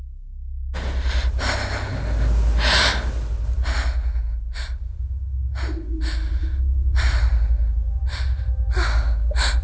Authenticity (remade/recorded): recorded